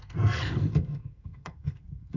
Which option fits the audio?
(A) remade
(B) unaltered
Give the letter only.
A